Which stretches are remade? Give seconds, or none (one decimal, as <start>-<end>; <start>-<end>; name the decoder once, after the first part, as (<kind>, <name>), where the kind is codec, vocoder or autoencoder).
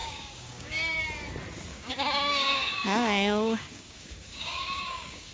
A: 0.0-1.0 (codec, DAC); 1.7-5.3